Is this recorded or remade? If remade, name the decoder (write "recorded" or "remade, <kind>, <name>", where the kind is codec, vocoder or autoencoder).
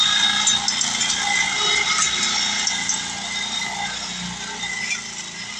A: recorded